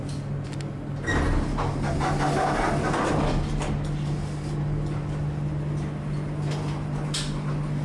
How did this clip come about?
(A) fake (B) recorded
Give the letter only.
B